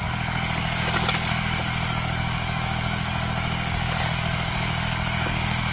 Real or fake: fake